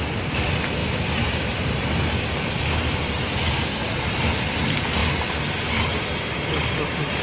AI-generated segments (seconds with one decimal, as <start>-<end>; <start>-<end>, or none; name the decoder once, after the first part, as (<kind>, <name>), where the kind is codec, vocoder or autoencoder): 0.8-1.9 (vocoder, BigVGAN v2)